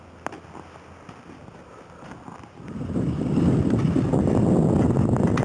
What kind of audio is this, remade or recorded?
recorded